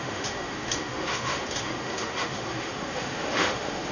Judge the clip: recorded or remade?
remade